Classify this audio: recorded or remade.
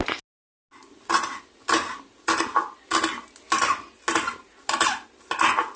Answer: recorded